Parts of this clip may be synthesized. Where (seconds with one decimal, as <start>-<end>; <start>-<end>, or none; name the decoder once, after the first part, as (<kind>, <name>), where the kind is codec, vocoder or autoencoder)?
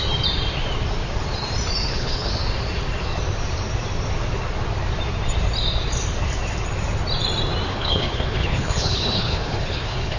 1.8-2.3 (codec, HILCodec); 7.7-10.2